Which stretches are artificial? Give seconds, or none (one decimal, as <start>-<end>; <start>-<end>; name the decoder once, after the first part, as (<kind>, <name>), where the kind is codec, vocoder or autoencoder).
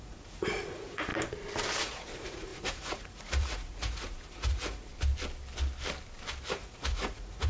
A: 0.0-1.1 (vocoder, Vocos); 1.8-4.9; 6.5-7.5